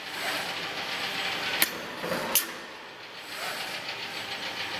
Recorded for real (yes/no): yes